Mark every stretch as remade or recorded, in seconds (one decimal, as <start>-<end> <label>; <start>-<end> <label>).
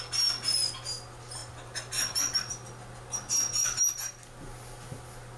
0.0-5.4 recorded